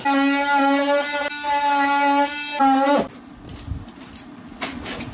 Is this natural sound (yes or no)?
yes